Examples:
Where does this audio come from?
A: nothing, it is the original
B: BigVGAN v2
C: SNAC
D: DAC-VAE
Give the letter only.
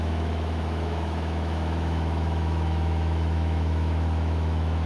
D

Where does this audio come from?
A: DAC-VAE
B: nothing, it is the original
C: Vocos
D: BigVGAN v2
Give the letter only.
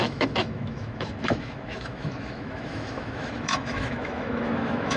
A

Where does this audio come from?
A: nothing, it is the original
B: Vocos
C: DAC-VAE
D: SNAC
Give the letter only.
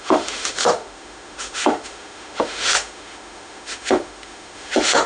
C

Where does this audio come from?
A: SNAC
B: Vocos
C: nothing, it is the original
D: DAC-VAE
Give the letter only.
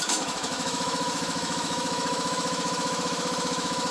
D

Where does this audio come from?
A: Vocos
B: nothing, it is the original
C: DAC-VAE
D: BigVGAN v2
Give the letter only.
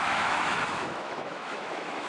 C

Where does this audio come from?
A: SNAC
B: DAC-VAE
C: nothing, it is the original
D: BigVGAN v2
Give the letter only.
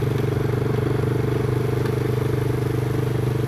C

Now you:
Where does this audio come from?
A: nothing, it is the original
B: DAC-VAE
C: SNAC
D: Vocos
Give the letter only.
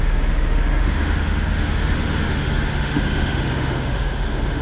B